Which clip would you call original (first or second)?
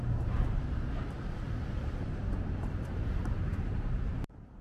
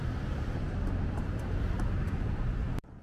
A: second